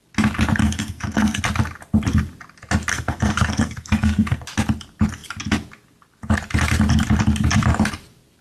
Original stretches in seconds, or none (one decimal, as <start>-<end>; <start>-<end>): 0.0-0.6; 1.4-2.9; 4.4-8.4